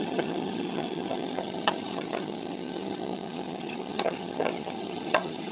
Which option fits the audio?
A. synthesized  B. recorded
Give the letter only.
A